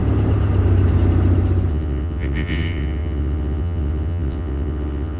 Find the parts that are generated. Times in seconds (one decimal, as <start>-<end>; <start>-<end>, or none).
1.7-5.2